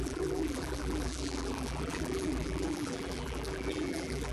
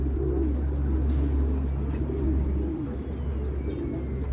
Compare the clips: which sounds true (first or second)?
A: second